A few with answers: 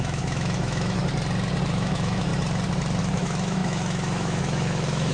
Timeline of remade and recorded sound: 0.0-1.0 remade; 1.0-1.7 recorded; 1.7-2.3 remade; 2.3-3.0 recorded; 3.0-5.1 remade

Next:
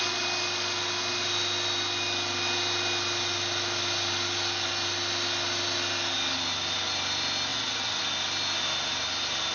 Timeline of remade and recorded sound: 0.0-7.5 recorded; 7.5-8.0 remade; 8.0-9.5 recorded

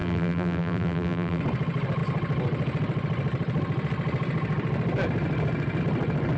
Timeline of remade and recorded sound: 0.0-1.4 remade; 1.4-6.4 recorded

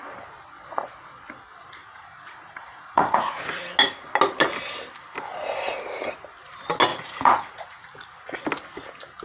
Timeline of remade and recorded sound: 0.0-1.8 recorded; 1.8-3.6 remade; 3.6-6.9 recorded; 6.9-8.4 remade; 8.4-9.2 recorded

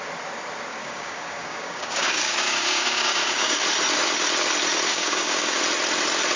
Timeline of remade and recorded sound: 0.0-0.7 recorded; 0.7-3.6 remade; 3.6-4.9 recorded; 4.9-5.6 remade; 5.6-6.4 recorded

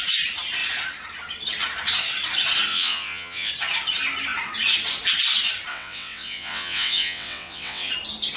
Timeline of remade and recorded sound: 0.0-2.7 recorded; 2.7-3.5 remade; 3.5-5.7 recorded; 5.7-7.9 remade; 7.9-8.4 recorded

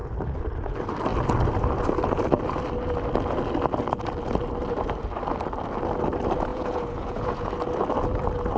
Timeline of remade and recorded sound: 0.0-6.5 recorded; 6.5-7.5 remade; 7.5-8.6 recorded

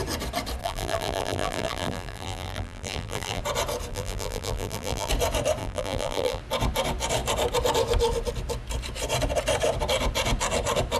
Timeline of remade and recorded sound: 0.0-0.6 recorded; 0.6-3.4 remade; 3.4-3.9 recorded; 3.9-5.1 remade; 5.1-5.6 recorded; 5.6-6.4 remade; 6.4-11.0 recorded